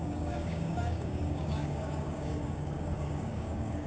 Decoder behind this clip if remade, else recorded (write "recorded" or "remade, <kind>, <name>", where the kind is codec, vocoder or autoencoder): remade, codec, DAC